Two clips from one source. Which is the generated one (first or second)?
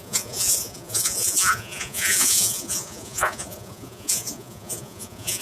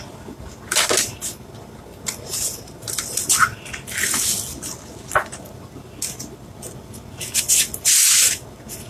first